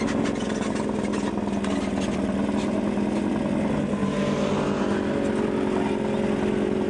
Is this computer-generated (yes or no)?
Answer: no